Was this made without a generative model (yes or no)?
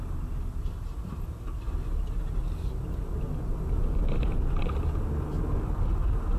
yes